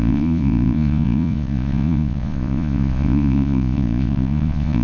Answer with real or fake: fake